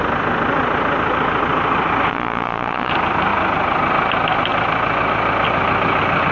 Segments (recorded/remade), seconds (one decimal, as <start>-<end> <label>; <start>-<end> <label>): 0.0-2.1 recorded; 2.1-2.9 remade; 2.9-6.3 recorded